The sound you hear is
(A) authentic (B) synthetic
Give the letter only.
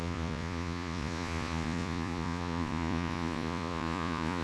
B